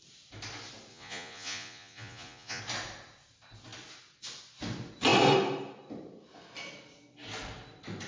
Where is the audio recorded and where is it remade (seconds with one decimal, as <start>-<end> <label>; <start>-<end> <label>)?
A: 0.0-0.9 recorded; 0.9-2.6 remade; 2.6-8.1 recorded